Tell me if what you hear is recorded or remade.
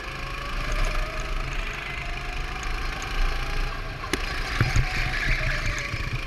recorded